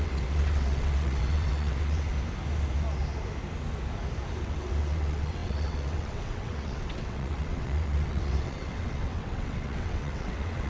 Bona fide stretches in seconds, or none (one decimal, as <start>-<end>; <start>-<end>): 2.1-4.4